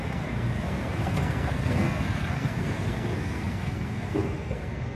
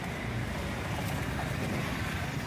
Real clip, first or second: second